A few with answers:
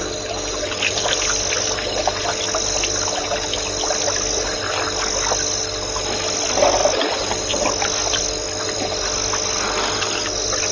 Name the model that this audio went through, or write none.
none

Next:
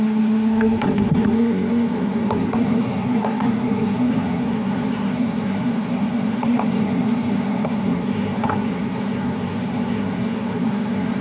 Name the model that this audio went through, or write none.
codec, SNAC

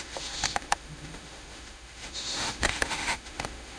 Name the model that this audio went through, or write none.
autoencoder, DAC-VAE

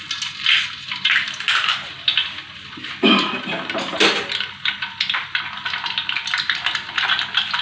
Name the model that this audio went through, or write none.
none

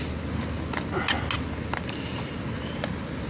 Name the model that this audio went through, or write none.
none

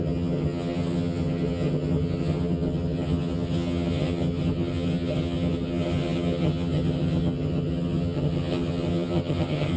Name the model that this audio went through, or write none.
vocoder, HiFi-GAN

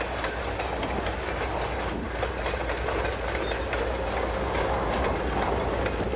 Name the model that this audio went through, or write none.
none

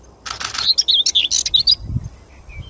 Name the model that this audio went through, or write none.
none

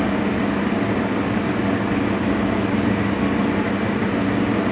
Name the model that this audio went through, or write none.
none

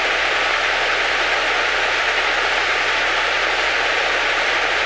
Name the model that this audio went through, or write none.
vocoder, BigVGAN v2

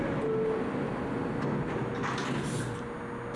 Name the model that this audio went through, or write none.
none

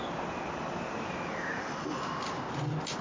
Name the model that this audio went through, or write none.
none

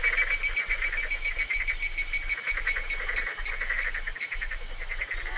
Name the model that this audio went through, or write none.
none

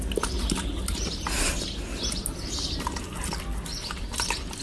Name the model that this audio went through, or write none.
none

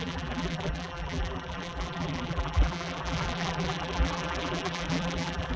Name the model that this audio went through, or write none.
vocoder, BigVGAN v2